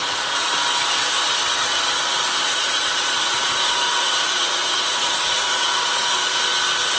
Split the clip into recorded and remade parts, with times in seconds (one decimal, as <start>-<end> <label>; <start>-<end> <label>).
0.0-0.5 remade; 0.5-2.4 recorded; 2.4-6.4 remade; 6.4-7.0 recorded